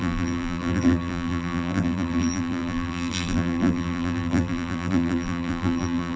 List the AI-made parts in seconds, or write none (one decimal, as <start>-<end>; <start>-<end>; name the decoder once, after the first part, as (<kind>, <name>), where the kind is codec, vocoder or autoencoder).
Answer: 0.0-6.2 (vocoder, BigVGAN v2)